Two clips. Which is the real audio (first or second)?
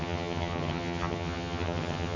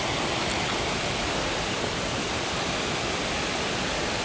second